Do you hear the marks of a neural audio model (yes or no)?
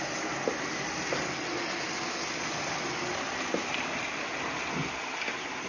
no